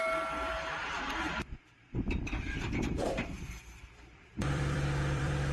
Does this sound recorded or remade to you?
remade